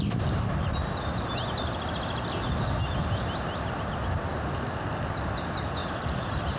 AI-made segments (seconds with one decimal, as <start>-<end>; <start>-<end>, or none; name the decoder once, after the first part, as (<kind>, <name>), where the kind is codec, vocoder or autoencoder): 5.8-6.6 (vocoder, BigVGAN v2)